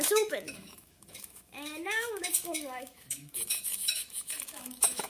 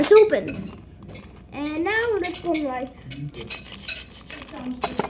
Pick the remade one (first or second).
first